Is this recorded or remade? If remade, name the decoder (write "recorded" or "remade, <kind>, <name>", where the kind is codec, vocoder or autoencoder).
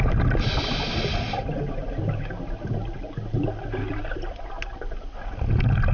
recorded